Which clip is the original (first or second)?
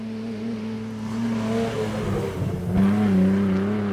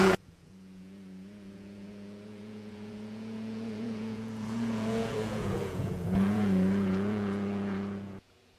first